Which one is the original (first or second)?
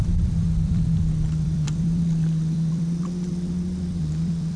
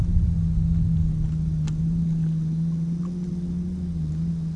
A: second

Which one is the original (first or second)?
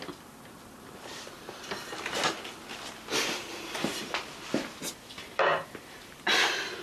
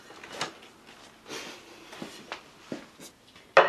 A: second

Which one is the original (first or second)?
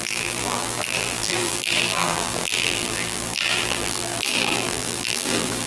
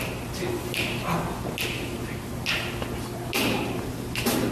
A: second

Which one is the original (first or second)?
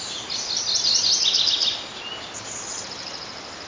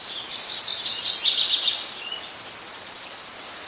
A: first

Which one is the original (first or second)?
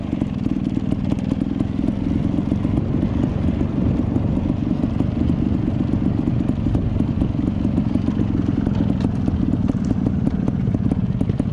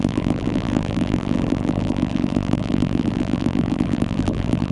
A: first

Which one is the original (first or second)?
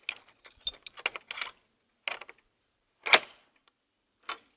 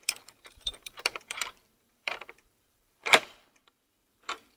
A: first